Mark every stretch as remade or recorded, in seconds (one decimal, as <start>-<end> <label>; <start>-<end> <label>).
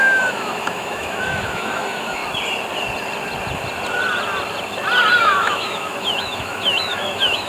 0.0-2.2 remade; 2.2-5.2 recorded; 5.2-7.5 remade